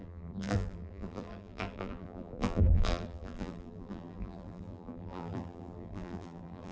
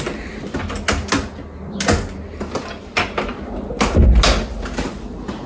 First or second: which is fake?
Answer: first